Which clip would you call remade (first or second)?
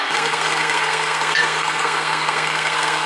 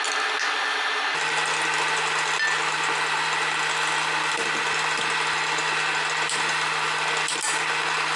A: first